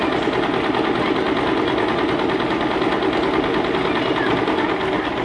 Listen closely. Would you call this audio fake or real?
real